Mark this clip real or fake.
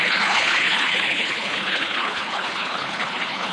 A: fake